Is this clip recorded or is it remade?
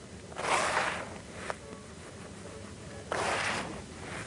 recorded